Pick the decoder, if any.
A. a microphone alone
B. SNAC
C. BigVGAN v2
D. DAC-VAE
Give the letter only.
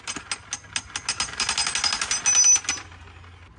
A